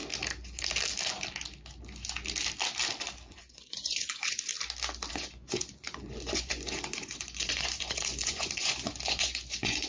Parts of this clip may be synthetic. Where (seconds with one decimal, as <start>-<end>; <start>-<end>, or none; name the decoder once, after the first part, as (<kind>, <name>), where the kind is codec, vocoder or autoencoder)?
3.3-4.5 (vocoder, Vocos); 5.1-9.9